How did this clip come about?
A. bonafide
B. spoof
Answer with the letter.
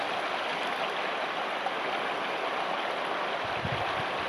A